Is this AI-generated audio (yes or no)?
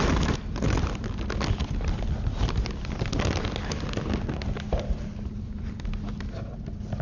no